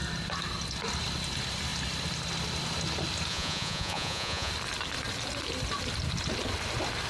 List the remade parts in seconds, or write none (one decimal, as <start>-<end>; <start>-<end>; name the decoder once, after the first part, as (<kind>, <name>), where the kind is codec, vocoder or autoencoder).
3.3-4.5 (vocoder, Vocos)